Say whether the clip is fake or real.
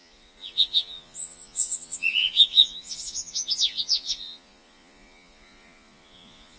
fake